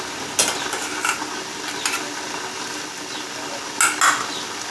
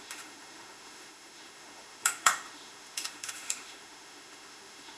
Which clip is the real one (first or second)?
first